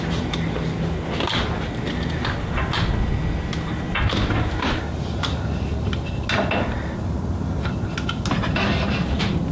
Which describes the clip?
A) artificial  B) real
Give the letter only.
B